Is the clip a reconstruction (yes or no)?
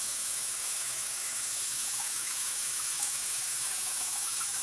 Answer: yes